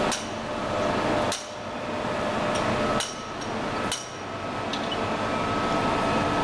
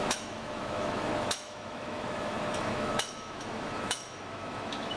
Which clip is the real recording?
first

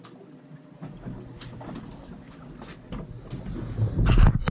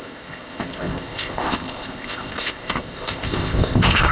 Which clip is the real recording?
first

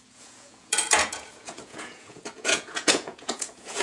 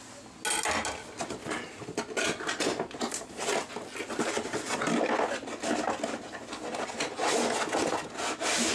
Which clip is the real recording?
second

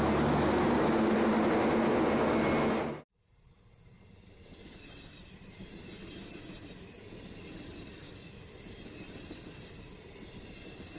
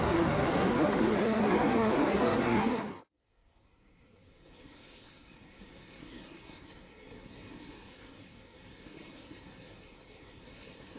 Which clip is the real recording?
first